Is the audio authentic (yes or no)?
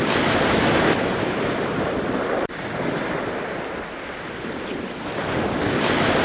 yes